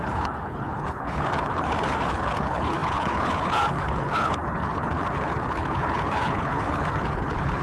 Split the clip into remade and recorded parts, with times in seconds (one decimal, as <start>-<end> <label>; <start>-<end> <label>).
0.0-7.6 remade